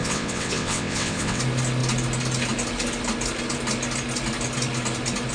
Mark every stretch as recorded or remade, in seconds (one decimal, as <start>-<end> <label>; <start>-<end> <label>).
0.0-1.4 remade; 1.4-5.3 recorded